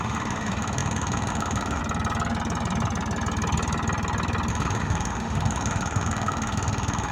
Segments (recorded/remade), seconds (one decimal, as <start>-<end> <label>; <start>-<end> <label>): 0.0-1.8 remade; 1.8-4.5 recorded; 4.5-7.1 remade